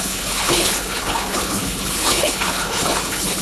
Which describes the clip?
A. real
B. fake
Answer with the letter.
B